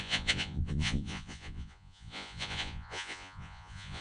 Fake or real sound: fake